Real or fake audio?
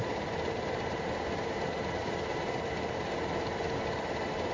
real